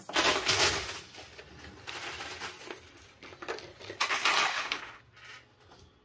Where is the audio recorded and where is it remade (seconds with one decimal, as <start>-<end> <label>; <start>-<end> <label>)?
0.0-4.5 recorded; 4.5-5.0 remade; 5.0-6.0 recorded